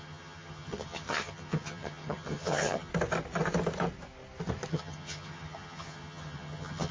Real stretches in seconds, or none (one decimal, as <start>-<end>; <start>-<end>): 2.9-4.7